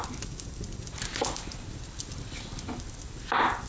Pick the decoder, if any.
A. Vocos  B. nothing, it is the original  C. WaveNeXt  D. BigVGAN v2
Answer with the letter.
B